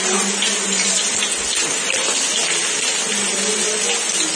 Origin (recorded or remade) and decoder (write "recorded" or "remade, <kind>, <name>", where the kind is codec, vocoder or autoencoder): recorded